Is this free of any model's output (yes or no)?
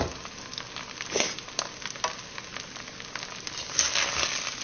yes